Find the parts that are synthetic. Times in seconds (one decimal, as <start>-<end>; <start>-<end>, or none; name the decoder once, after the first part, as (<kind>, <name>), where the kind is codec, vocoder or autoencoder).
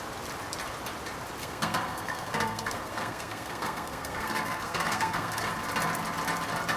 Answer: 1.4-5.5 (codec, SNAC)